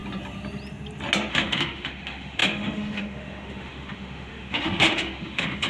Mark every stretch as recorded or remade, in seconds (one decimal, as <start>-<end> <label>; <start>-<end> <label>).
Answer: 0.0-1.3 recorded; 1.3-5.7 remade